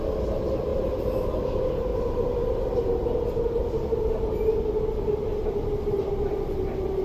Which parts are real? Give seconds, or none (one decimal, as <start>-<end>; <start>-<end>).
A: 0.0-7.0